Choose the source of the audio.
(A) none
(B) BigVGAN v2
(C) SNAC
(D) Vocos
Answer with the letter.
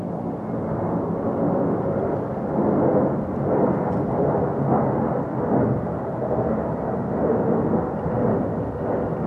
A